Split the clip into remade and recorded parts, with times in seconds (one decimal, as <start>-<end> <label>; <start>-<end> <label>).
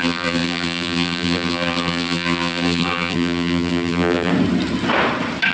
0.0-4.3 remade; 4.3-5.5 recorded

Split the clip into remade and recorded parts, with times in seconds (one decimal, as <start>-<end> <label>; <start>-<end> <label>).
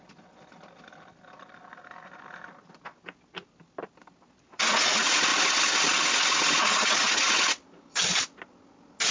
0.0-9.1 recorded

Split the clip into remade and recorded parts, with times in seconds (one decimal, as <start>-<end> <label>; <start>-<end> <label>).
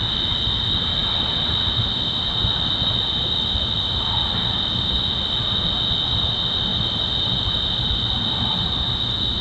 0.0-6.7 recorded; 6.7-7.9 remade; 7.9-9.4 recorded